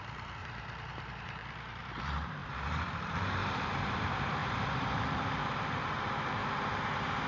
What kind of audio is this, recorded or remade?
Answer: remade